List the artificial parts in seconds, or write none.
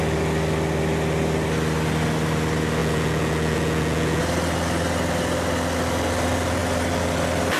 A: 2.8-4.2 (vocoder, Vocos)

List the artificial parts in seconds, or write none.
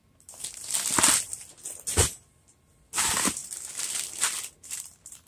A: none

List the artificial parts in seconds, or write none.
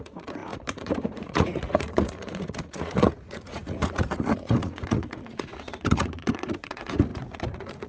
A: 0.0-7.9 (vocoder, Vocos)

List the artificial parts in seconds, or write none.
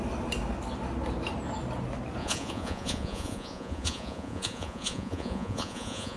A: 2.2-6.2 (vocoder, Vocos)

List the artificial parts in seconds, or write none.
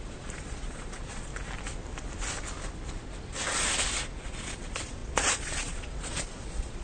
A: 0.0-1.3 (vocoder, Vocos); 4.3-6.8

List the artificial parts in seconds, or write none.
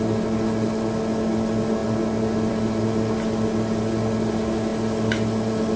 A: none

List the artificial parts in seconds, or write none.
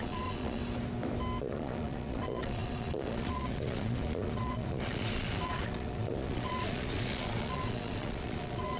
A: 0.0-0.6 (vocoder, Vocos); 1.4-8.8